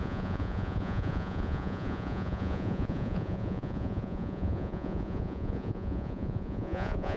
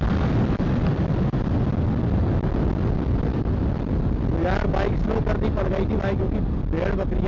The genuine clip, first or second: second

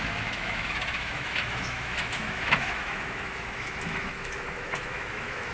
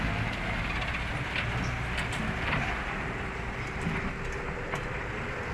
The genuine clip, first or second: second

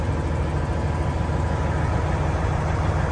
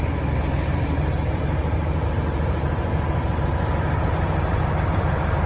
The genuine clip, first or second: first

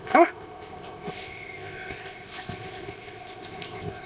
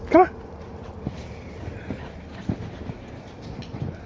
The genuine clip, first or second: second